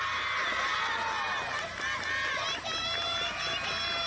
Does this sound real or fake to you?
real